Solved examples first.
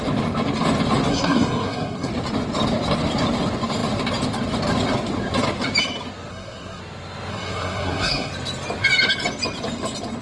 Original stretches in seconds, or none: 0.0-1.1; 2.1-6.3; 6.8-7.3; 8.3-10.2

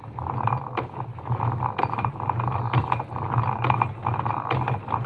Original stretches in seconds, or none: 0.0-1.1; 1.6-5.1

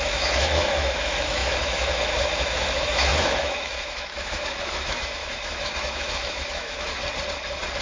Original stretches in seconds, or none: 7.0-7.8

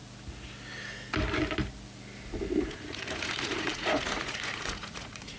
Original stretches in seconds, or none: 0.0-2.7

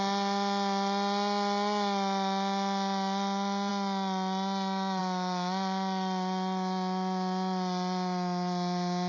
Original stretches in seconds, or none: 0.0-9.1

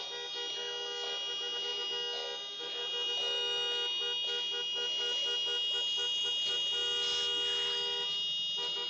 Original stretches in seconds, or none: 0.0-8.9

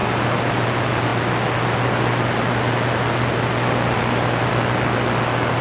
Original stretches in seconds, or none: 0.0-5.6

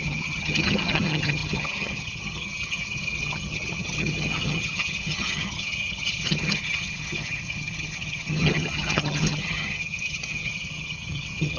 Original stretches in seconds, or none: none